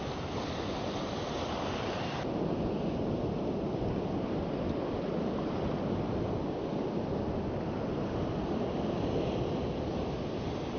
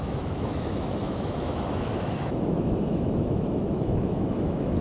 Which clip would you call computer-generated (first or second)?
second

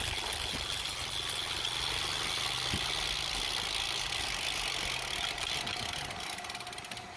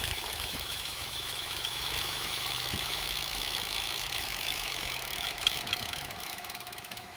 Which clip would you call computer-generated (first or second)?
second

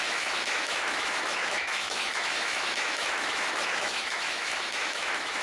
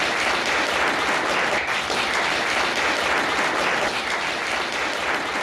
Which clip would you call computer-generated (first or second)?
first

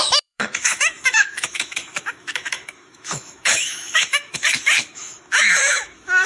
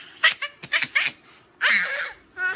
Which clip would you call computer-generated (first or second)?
first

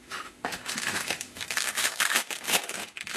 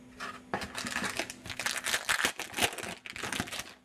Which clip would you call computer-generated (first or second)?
first